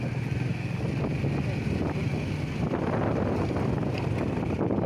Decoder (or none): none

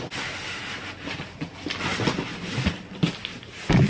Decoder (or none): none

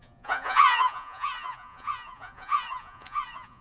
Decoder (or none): vocoder, Vocos